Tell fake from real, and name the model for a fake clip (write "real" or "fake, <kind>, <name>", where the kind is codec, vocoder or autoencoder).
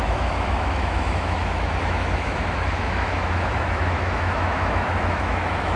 fake, autoencoder, DAC-VAE